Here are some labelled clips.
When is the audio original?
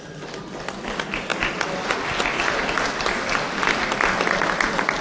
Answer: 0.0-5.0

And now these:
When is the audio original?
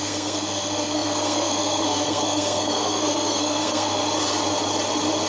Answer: 4.0-5.3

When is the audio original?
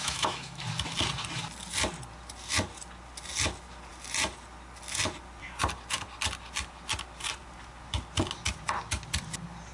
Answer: 0.6-9.7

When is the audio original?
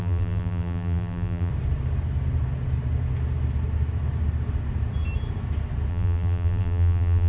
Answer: 1.5-5.9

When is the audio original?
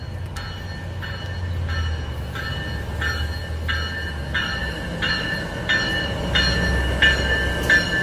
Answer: 0.0-4.6; 6.2-8.0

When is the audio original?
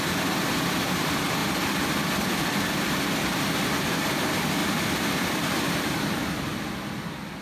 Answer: 0.0-1.4; 3.1-4.6; 6.1-7.4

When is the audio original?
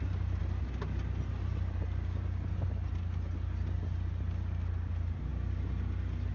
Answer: 0.0-6.3